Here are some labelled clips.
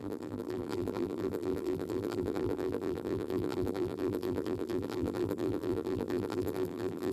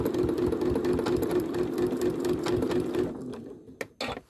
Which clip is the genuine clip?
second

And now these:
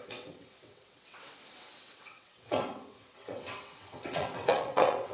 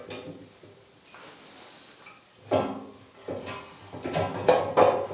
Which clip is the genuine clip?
second